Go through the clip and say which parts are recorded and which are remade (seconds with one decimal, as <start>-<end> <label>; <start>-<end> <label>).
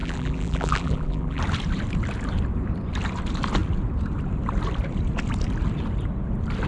0.0-1.4 remade; 1.4-6.7 recorded